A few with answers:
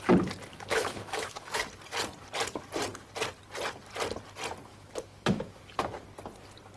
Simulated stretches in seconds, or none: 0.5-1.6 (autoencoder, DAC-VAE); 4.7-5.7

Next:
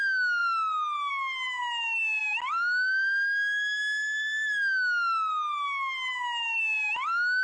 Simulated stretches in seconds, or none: none

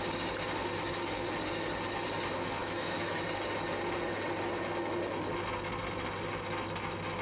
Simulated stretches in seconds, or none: 2.6-3.2 (autoencoder, DAC-VAE)